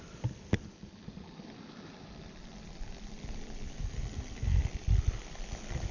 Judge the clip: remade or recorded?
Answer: remade